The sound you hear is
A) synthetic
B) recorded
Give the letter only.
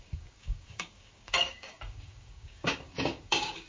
A